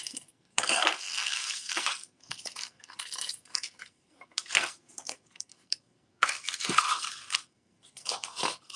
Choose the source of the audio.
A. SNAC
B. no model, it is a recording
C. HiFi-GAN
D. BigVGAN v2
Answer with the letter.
A